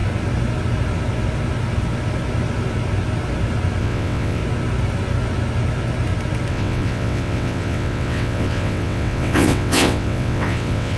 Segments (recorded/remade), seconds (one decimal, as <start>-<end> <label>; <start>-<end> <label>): 0.0-3.8 recorded; 3.8-4.4 remade; 4.4-6.5 recorded; 6.5-11.0 remade